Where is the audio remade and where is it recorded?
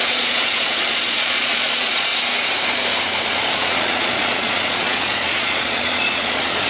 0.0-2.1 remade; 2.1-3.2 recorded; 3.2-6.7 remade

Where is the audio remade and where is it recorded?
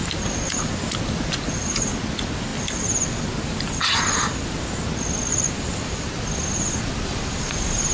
0.0-0.6 remade; 0.6-5.3 recorded; 5.3-7.4 remade; 7.4-7.9 recorded